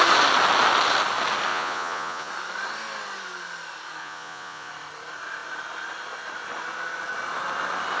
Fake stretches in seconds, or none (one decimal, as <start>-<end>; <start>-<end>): 1.5-2.3; 4.0-4.7